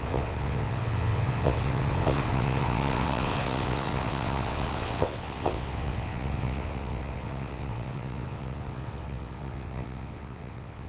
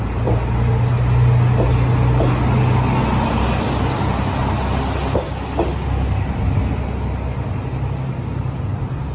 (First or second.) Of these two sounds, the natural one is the second